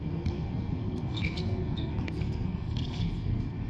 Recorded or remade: remade